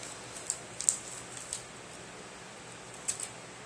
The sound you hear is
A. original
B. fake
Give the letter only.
A